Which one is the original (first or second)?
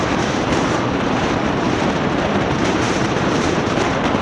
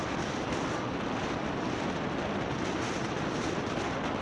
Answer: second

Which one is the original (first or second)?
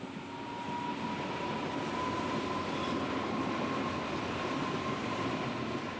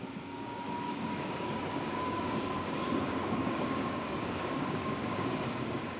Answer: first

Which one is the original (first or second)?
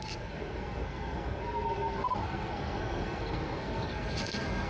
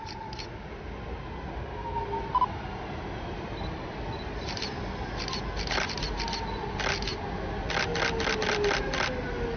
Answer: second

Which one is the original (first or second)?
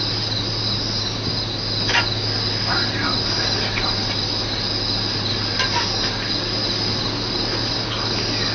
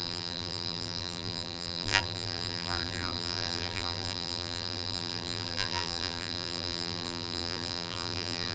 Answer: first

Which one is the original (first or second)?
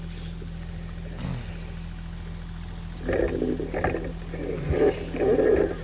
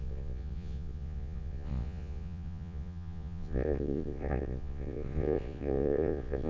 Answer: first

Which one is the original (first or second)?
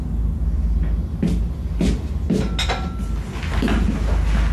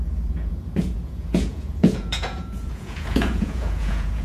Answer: first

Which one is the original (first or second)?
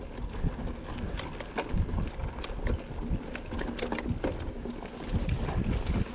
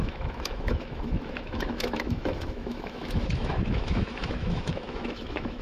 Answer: first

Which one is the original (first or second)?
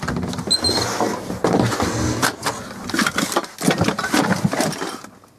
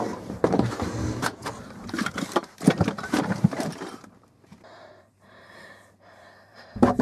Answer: first